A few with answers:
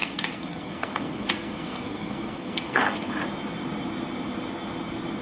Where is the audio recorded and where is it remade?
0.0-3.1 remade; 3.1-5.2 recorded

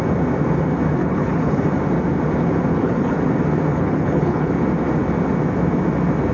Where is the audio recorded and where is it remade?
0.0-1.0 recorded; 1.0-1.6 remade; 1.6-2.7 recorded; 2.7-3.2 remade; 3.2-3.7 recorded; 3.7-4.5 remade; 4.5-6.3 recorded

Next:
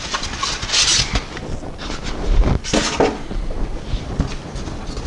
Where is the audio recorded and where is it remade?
0.0-5.1 recorded

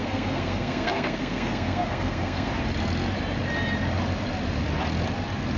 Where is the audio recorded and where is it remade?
0.0-2.5 remade; 2.5-5.6 recorded

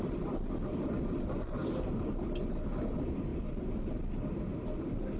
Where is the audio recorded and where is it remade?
0.0-0.7 recorded; 0.7-1.7 remade; 1.7-3.3 recorded; 3.3-4.0 remade; 4.0-5.2 recorded

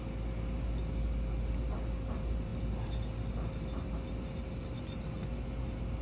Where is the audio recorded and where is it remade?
0.0-6.0 recorded

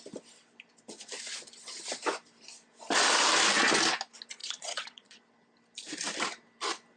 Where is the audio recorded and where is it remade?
0.0-4.4 recorded; 4.4-5.2 remade; 5.2-7.0 recorded

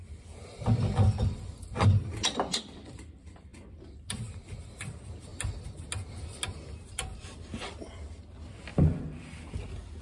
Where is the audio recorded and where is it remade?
0.0-5.3 remade; 5.3-6.9 recorded; 6.9-8.7 remade; 8.7-10.0 recorded